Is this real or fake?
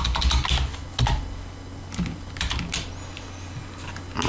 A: real